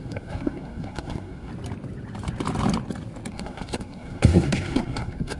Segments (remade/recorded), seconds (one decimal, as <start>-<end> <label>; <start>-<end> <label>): 0.0-1.5 remade; 1.5-3.3 recorded; 3.3-5.4 remade